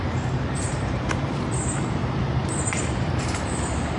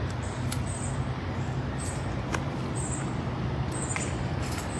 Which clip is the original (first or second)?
second